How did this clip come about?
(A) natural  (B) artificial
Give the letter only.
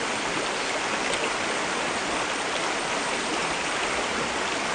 A